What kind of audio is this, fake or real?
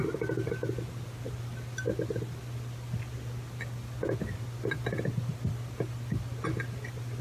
real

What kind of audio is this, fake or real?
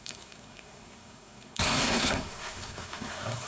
fake